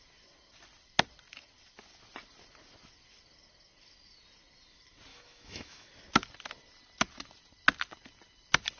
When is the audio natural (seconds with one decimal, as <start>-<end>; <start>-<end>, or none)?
0.0-5.1; 5.9-8.8